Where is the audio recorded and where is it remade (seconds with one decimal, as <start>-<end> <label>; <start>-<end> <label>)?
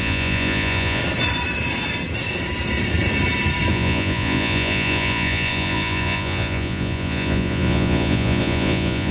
0.0-1.0 remade; 1.0-3.7 recorded; 3.7-9.1 remade